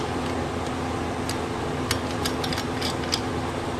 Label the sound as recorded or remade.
recorded